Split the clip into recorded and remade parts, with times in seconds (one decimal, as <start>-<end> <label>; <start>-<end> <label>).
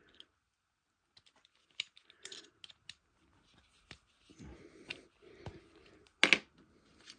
0.0-7.2 recorded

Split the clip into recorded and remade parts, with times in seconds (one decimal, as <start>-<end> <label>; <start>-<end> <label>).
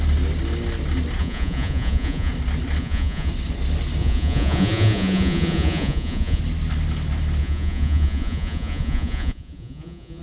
0.0-1.2 recorded; 1.2-2.3 remade; 2.3-2.8 recorded; 2.8-3.3 remade; 3.3-4.0 recorded; 4.0-6.4 remade; 6.4-7.4 recorded; 7.4-10.2 remade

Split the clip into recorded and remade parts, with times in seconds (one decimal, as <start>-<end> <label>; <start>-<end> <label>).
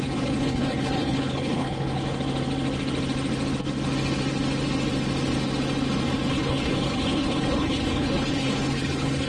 0.0-2.0 remade; 2.0-6.3 recorded; 6.3-9.3 remade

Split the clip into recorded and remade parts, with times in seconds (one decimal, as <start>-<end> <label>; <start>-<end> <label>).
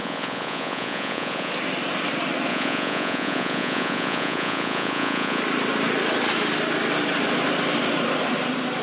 0.0-1.5 remade; 1.5-2.5 recorded; 2.5-5.4 remade; 5.4-8.8 recorded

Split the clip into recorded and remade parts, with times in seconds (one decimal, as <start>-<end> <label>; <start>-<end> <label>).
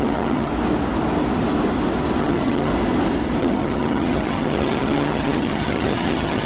0.0-0.5 remade; 0.5-2.2 recorded; 2.2-2.7 remade; 2.7-3.4 recorded; 3.4-6.5 remade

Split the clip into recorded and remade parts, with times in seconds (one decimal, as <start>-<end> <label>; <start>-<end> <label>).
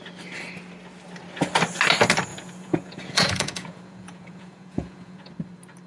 0.0-2.3 recorded; 2.3-5.3 remade; 5.3-5.9 recorded